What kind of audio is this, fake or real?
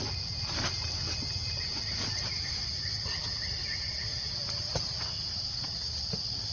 real